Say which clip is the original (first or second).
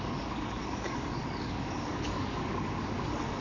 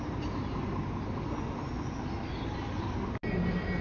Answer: second